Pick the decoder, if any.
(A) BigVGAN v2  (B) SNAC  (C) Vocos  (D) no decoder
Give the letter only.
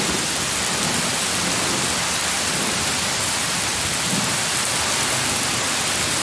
D